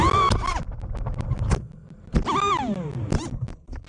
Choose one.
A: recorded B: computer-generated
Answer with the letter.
B